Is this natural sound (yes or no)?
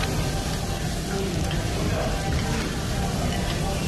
yes